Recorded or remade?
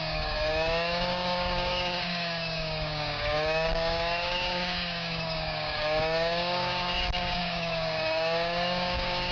remade